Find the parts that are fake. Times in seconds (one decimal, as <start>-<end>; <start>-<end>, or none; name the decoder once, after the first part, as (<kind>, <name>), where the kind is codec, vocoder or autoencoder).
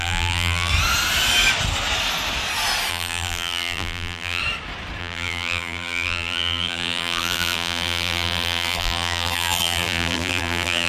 0.0-0.7 (vocoder, BigVGAN v2); 2.9-4.4; 5.0-10.9